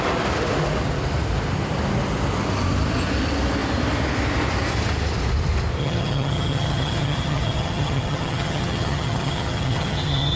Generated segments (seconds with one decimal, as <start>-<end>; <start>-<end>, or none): 5.8-10.4